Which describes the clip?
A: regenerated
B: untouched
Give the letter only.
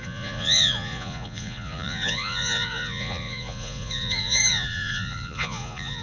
A